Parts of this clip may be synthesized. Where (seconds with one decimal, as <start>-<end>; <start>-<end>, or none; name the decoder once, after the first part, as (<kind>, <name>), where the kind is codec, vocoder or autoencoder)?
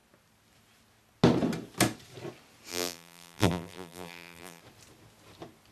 2.7-4.6 (vocoder, BigVGAN v2)